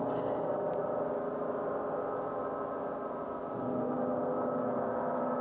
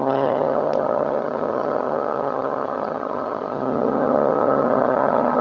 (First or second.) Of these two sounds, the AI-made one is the second